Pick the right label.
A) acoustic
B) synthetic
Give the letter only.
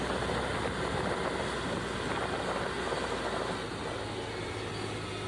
A